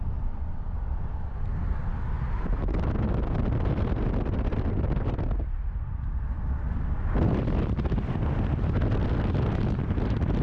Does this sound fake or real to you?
real